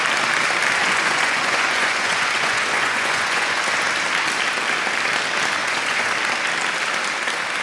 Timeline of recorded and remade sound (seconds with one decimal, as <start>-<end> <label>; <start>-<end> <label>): 0.0-0.8 recorded; 0.8-3.6 remade; 3.6-5.6 recorded; 5.6-6.1 remade; 6.1-7.6 recorded